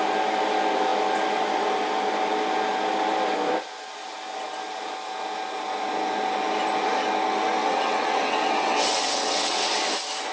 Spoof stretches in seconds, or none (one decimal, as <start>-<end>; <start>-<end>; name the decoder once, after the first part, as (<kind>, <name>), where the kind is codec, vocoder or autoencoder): 7.6-9.7 (vocoder, WaveNeXt)